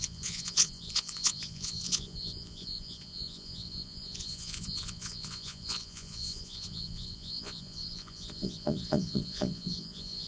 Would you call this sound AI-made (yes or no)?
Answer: yes